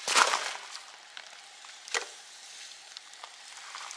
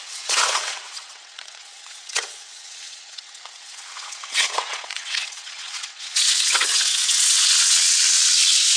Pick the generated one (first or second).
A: second